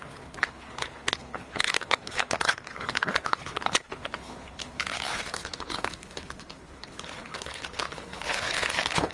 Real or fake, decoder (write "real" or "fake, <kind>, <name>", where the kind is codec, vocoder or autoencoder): fake, codec, HILCodec